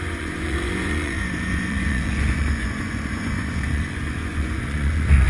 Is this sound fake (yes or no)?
yes